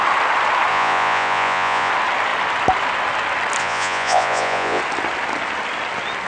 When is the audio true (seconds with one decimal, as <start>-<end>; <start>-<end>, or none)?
0.0-0.7; 1.9-3.6; 4.8-6.3